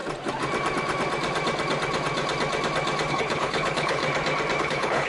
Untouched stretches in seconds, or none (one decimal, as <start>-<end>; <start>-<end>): 0.0-3.1; 4.0-4.6